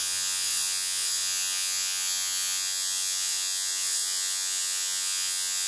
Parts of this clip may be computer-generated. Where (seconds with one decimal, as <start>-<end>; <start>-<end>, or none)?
0.0-5.7